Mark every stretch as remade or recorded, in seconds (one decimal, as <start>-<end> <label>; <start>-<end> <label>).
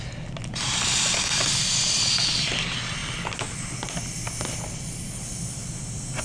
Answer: 0.0-6.2 recorded